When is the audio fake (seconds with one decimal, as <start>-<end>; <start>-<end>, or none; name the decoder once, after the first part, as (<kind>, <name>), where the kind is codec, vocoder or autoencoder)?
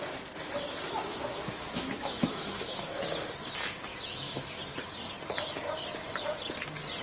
1.1-3.0 (autoencoder, DAC-VAE); 3.9-4.6